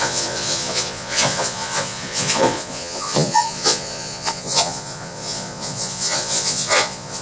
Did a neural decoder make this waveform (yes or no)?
yes